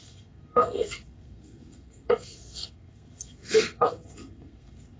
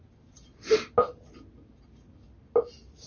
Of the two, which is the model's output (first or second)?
first